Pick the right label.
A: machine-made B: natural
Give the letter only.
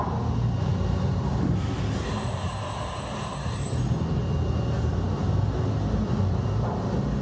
B